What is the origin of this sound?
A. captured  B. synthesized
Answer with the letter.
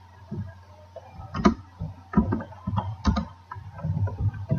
A